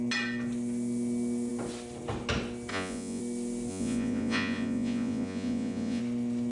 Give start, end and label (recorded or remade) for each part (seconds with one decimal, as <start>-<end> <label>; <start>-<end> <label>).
0.0-2.7 recorded; 2.7-3.2 remade; 3.2-3.7 recorded; 3.7-6.0 remade; 6.0-6.5 recorded